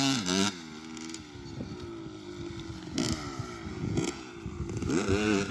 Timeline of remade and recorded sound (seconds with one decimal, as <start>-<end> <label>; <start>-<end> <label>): 0.0-3.7 recorded; 3.7-4.3 remade; 4.3-5.5 recorded